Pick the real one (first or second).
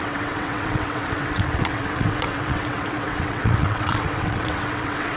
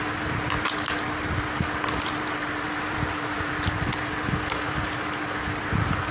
second